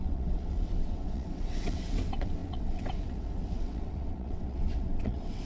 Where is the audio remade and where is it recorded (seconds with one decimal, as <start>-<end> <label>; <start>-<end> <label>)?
0.0-5.5 remade